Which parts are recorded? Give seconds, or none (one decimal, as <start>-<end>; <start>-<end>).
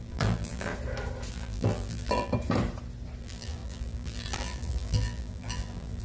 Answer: 0.7-1.3; 2.3-3.2